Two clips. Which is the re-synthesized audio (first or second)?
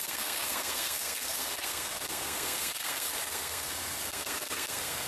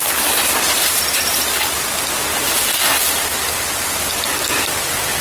first